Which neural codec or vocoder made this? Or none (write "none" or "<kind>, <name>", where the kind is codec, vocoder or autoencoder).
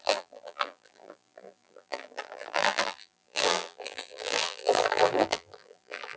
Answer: vocoder, BigVGAN v2